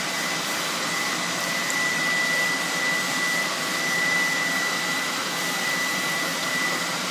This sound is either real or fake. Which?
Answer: fake